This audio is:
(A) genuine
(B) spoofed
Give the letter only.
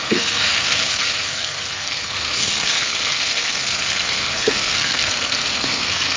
B